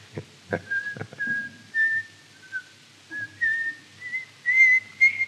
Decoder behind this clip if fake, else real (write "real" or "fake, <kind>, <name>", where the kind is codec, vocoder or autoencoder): real